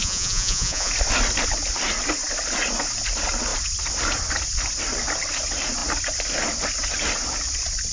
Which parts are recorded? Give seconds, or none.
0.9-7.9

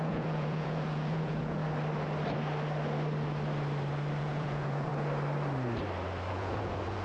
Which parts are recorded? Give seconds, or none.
1.6-4.2; 4.9-6.3

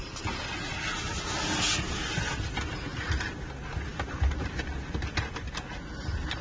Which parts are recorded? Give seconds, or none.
0.0-6.4

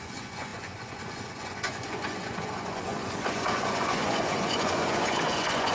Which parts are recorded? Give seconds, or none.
none

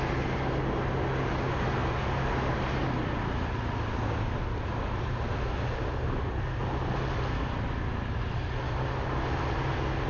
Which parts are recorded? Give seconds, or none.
0.0-10.1